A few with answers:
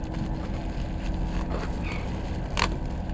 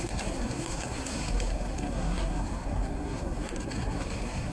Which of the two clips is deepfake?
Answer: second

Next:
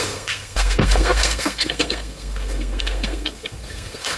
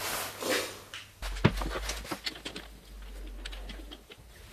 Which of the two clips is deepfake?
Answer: first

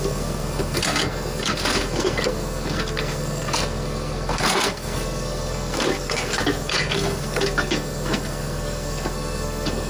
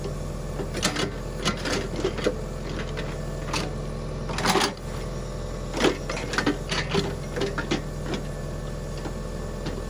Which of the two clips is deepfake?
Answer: first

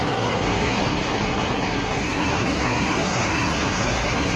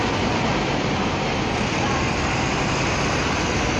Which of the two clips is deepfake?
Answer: first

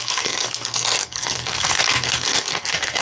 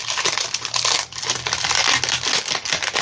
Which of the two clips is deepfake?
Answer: first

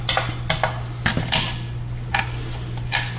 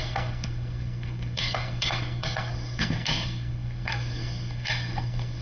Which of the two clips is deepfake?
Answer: second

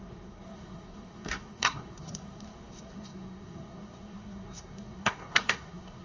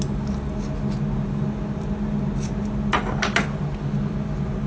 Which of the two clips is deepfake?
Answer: first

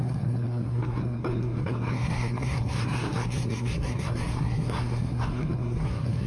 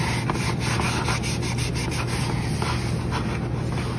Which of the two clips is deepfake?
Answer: first